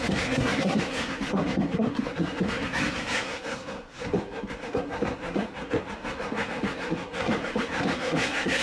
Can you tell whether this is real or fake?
fake